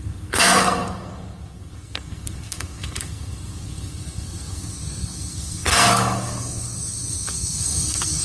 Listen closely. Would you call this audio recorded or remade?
remade